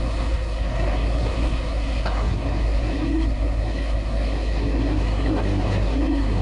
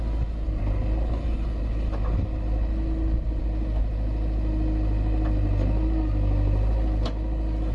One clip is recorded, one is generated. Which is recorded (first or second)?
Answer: second